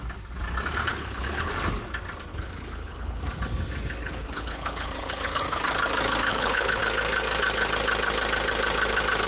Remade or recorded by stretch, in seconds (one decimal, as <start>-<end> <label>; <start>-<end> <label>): 0.0-0.9 recorded; 0.9-1.5 remade; 1.5-2.3 recorded; 2.3-3.2 remade; 3.2-4.0 recorded; 4.0-5.4 remade; 5.4-6.3 recorded; 6.3-6.8 remade; 6.8-9.3 recorded